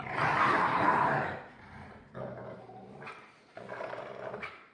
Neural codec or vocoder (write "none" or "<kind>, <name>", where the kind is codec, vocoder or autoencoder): vocoder, BigVGAN v2